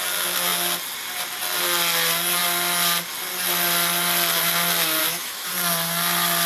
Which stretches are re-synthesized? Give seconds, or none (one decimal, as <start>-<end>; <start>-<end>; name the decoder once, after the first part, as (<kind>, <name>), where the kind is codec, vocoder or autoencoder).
5.0-5.5 (autoencoder, DAC-VAE)